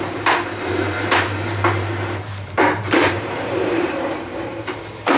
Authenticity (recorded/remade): remade